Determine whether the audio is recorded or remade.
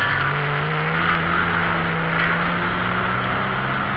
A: recorded